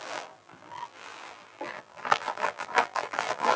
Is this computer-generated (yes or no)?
yes